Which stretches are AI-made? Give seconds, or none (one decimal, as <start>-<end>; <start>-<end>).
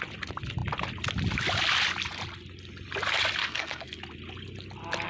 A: 3.4-4.0